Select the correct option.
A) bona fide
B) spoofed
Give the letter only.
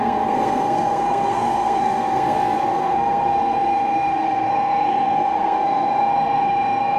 B